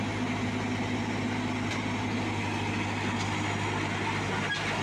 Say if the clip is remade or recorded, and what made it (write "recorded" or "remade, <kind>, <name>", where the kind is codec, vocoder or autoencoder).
recorded